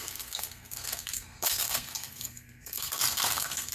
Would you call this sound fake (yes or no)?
yes